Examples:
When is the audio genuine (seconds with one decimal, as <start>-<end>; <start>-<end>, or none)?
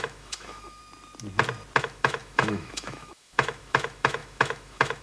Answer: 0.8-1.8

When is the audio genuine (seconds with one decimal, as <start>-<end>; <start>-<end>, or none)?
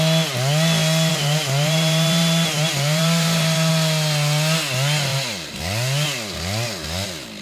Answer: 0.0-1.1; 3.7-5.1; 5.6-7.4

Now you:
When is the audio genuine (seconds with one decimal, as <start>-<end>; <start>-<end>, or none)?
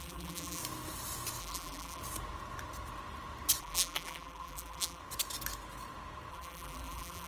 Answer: 0.6-1.4; 2.0-3.6; 5.0-6.3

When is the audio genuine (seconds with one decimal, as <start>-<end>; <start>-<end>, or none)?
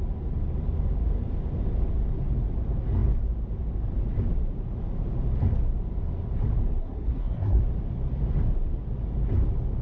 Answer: 0.0-6.8; 7.6-9.8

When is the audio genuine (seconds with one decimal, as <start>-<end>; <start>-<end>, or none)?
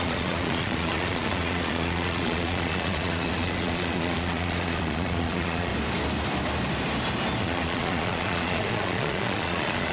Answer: 5.7-7.4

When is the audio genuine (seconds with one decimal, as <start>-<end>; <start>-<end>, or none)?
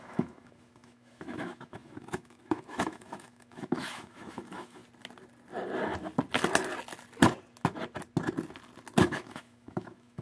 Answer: 4.8-9.0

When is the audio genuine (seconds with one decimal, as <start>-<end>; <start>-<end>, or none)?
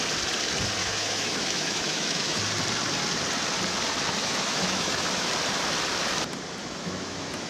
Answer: 0.0-0.8; 2.4-4.2; 5.3-6.6